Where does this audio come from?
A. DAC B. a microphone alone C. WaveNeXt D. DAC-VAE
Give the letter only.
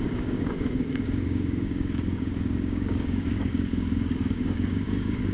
A